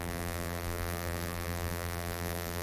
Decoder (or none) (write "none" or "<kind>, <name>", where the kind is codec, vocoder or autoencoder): vocoder, BigVGAN v2